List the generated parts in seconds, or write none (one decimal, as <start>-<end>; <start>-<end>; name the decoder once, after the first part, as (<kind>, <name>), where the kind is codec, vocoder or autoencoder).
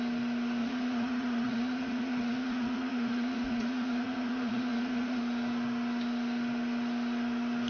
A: 0.6-5.2 (vocoder, Vocos)